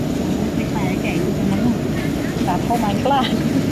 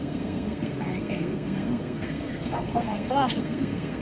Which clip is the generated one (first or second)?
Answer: second